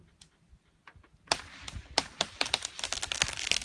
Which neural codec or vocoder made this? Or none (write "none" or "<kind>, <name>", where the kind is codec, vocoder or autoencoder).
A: none